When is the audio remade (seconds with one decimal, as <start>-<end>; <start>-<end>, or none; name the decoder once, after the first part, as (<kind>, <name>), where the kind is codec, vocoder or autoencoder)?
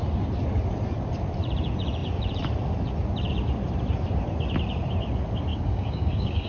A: 5.5-6.5 (codec, DAC)